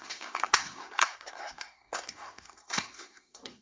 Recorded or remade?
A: remade